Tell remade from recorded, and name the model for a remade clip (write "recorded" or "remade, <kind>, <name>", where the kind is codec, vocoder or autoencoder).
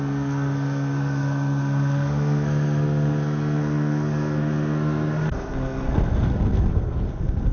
remade, codec, SNAC